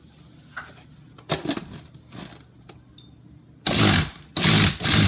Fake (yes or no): no